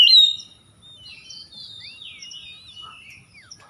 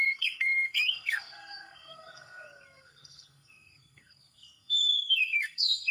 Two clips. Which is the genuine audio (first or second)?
first